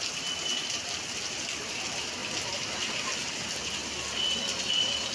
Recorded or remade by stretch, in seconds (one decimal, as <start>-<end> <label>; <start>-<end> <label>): 0.0-0.5 recorded; 0.5-1.1 remade; 1.1-2.2 recorded; 2.2-2.9 remade; 2.9-3.8 recorded; 3.8-5.1 remade